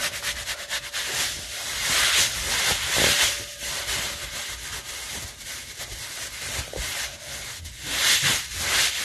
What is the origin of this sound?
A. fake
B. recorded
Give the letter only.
B